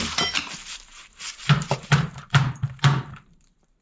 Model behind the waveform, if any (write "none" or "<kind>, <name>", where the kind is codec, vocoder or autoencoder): vocoder, BigVGAN v2